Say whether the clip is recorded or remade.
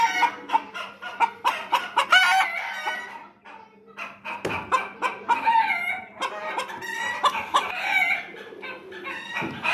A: recorded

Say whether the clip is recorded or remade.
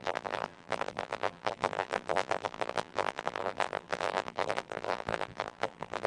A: remade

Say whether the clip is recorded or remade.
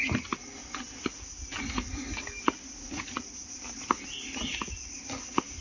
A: recorded